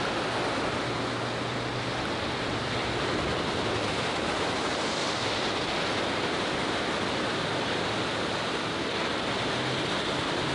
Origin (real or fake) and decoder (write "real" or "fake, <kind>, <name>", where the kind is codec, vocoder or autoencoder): real